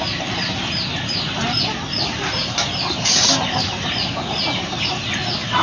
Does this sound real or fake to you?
real